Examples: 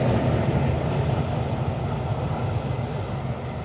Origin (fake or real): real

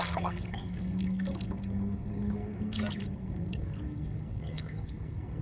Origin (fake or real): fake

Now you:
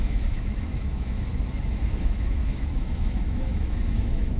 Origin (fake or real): fake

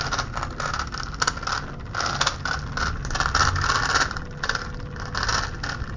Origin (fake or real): real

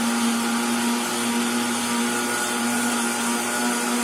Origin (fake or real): real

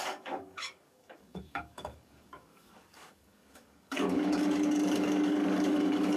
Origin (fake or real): fake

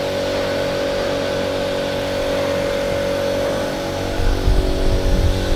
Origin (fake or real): real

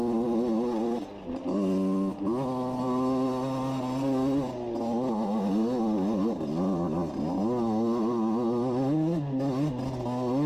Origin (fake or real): real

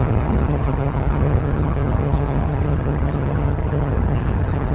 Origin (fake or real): fake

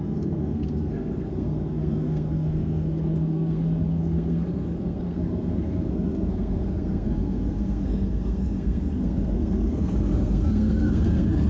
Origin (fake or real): fake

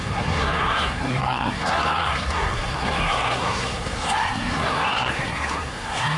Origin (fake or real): fake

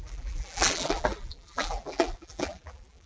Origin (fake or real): fake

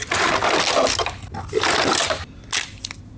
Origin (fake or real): real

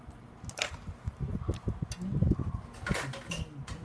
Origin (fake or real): real